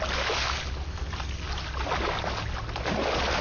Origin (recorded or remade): recorded